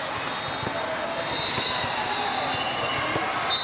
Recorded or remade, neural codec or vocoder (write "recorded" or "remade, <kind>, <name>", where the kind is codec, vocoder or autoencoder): recorded